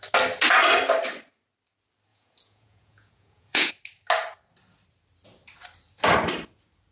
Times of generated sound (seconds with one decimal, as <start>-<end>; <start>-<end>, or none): 2.1-3.7